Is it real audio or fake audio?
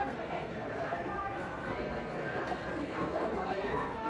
fake